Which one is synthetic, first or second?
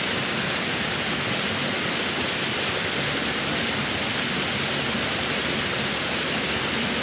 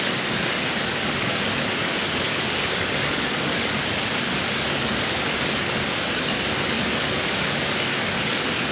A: second